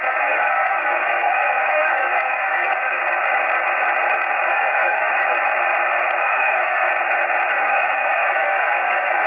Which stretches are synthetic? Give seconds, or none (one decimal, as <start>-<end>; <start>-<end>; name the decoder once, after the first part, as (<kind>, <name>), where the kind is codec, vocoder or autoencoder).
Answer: 0.0-3.0 (codec, SNAC); 4.5-5.1; 6.2-6.9; 7.5-9.3